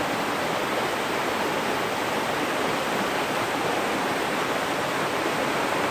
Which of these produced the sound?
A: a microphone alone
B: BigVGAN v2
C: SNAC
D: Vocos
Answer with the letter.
A